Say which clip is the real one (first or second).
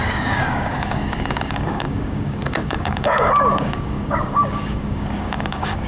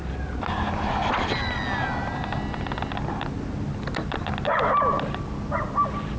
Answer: second